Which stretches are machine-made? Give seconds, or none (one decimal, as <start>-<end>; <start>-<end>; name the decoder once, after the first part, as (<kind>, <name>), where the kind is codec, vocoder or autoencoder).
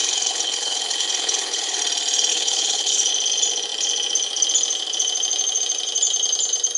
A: 0.0-1.8 (codec, HILCodec); 2.3-3.1